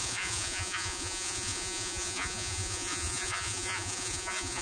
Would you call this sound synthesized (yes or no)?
yes